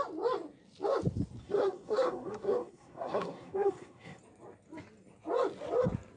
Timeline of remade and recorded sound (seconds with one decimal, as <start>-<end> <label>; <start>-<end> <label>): 0.0-1.4 recorded; 1.4-4.2 remade; 4.2-6.2 recorded